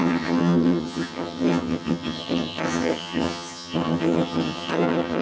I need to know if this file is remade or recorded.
remade